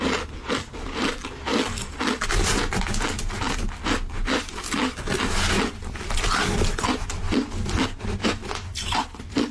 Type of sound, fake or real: real